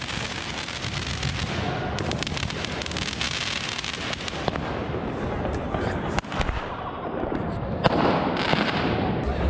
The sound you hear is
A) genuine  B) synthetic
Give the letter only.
A